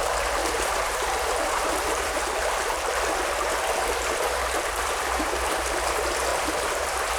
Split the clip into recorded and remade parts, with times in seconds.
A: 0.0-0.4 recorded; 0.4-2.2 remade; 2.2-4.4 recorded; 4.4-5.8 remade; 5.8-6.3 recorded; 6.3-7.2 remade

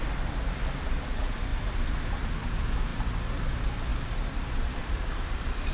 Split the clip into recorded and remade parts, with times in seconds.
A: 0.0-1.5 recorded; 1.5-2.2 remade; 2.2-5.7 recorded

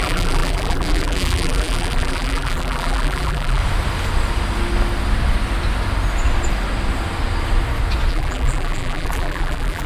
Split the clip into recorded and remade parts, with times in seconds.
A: 0.0-3.6 remade; 3.6-8.1 recorded; 8.1-9.9 remade

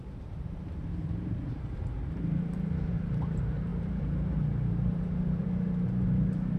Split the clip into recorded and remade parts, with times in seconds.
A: 0.0-6.6 remade